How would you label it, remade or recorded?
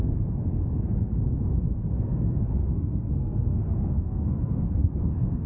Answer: remade